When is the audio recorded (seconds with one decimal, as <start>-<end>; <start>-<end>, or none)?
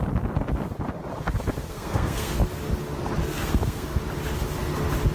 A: 0.0-1.6; 2.3-3.2; 4.0-5.1